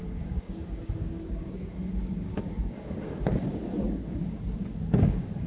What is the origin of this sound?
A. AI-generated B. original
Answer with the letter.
A